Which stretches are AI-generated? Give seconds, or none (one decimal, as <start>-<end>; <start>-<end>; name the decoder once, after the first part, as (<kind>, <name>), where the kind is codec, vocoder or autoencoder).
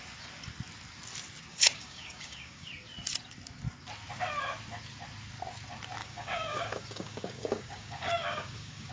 1.5-2.7 (codec, DAC); 6.0-8.9